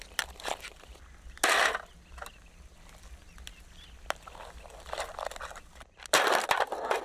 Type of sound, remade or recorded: recorded